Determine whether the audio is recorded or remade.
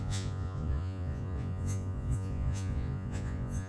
remade